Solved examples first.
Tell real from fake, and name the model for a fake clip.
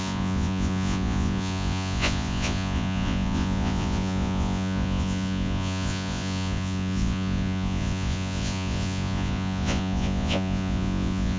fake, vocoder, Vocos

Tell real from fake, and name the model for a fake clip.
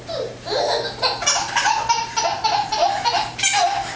fake, vocoder, BigVGAN v2